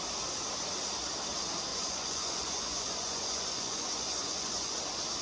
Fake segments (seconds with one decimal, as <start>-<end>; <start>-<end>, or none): 1.7-4.8